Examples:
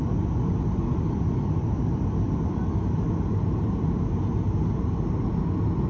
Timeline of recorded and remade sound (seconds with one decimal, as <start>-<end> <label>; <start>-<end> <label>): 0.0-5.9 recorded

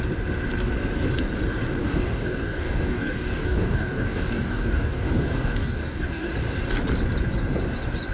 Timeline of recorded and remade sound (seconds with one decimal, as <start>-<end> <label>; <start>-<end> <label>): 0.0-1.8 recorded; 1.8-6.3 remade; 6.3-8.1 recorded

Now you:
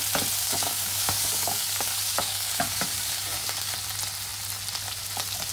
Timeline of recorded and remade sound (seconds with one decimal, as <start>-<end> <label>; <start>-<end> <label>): 0.0-0.4 recorded; 0.4-3.7 remade; 3.7-5.5 recorded